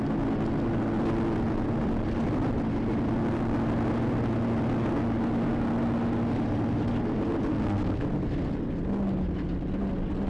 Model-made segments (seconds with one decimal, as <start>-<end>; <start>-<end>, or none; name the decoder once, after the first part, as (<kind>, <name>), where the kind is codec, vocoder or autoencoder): 7.5-8.0 (codec, SNAC)